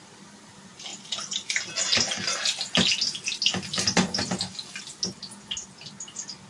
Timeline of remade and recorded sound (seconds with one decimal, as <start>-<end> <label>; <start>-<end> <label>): 0.0-6.5 recorded